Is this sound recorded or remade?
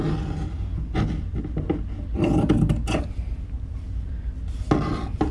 recorded